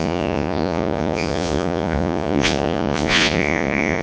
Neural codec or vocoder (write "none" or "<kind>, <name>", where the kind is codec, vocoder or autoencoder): vocoder, Vocos